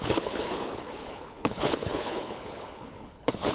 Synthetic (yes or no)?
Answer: yes